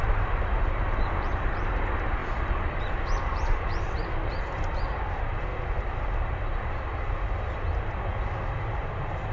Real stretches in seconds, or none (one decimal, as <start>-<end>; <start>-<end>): 2.2-2.8; 5.5-8.4